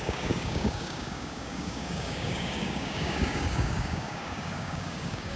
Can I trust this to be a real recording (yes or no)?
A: no